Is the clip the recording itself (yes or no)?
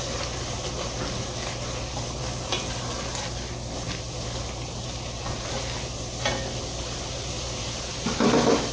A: yes